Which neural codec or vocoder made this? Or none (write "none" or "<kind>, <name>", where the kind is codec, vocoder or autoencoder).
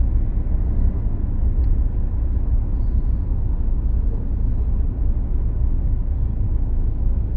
none